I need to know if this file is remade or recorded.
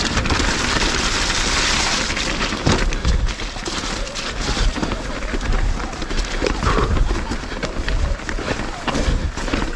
recorded